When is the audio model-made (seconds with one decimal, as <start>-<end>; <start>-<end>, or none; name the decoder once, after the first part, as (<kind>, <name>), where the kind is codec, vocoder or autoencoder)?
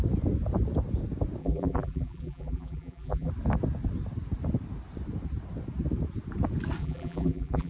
1.4-3.3 (vocoder, BigVGAN v2); 6.8-7.7